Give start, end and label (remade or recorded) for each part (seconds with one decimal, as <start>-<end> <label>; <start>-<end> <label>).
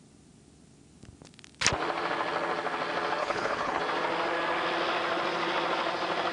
0.0-3.2 recorded; 3.2-3.8 remade; 3.8-6.3 recorded